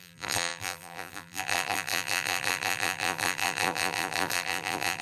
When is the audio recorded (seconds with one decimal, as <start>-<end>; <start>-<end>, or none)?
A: none